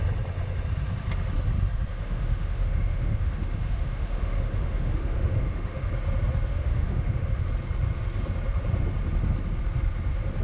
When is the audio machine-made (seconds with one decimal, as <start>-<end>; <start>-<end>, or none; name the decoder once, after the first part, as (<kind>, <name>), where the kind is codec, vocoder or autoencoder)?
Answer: 1.9-5.9 (autoencoder, DAC-VAE); 6.5-7.5